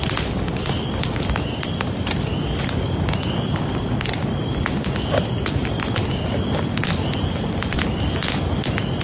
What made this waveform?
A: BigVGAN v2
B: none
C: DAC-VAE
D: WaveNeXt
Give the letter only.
B